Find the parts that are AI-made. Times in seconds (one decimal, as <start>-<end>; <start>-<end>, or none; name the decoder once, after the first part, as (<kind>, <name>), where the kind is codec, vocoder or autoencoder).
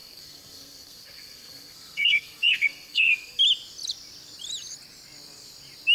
0.0-3.4 (codec, SNAC)